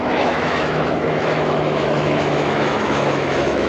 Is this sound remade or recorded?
remade